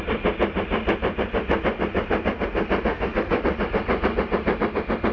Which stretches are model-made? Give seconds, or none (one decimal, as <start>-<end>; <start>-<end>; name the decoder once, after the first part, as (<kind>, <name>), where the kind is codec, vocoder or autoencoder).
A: 2.9-3.4 (autoencoder, DAC-VAE)

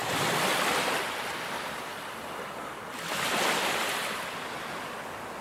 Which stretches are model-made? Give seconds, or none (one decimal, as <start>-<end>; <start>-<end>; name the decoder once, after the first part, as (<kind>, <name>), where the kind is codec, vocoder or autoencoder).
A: none

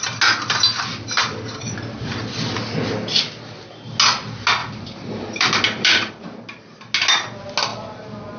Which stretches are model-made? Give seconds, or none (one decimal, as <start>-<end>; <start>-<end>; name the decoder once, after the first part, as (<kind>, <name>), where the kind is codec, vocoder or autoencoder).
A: 0.9-2.3 (vocoder, BigVGAN v2); 4.6-6.1

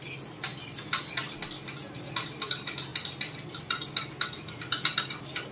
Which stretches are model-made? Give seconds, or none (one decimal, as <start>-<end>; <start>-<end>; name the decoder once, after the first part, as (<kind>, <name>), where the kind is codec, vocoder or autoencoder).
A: none

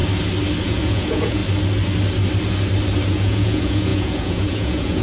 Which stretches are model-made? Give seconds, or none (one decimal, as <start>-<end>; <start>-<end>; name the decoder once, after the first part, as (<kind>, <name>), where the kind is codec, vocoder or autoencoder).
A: 0.6-1.4 (vocoder, Vocos); 3.1-5.0